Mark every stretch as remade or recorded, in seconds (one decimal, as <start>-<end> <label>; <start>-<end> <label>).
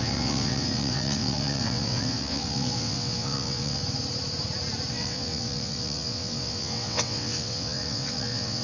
0.0-3.8 remade; 3.8-4.9 recorded; 4.9-8.6 remade